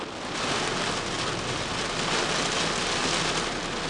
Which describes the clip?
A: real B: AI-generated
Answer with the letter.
A